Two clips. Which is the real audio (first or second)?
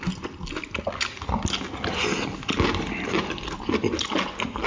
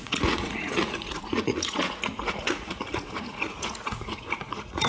first